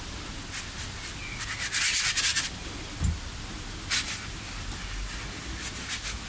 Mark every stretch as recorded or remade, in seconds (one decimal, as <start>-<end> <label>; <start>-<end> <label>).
0.0-6.3 recorded